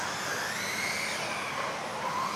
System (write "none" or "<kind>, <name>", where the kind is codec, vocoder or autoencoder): none